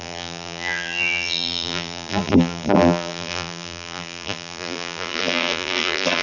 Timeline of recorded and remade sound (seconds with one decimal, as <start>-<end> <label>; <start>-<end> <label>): 0.0-6.2 remade